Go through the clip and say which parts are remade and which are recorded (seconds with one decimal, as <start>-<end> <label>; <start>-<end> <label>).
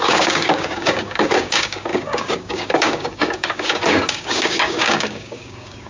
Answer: 0.0-5.9 remade